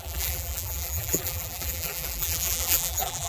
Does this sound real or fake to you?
fake